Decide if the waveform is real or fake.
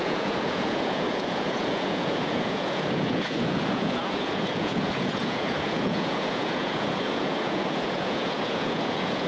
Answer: fake